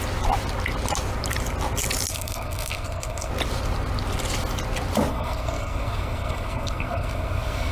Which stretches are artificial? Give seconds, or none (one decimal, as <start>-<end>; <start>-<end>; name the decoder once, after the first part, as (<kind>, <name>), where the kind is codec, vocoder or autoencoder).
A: 2.1-3.3 (codec, SNAC); 5.1-7.7